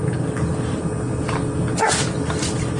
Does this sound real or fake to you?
real